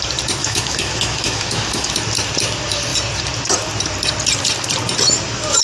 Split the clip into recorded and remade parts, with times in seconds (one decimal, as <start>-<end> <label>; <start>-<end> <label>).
0.0-0.4 recorded; 0.4-1.9 remade; 1.9-5.6 recorded